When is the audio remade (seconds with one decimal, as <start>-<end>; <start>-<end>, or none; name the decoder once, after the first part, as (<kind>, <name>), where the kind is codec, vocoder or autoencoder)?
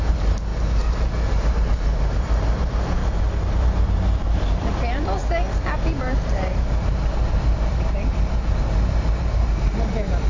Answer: 0.0-3.0 (vocoder, BigVGAN v2); 3.6-5.2; 6.0-10.3